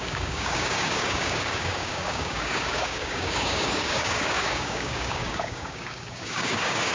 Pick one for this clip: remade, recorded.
remade